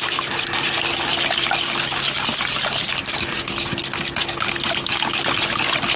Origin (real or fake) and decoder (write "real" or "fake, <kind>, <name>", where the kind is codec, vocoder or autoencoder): real